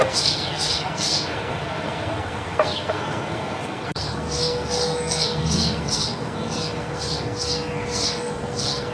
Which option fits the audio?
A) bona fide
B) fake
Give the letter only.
B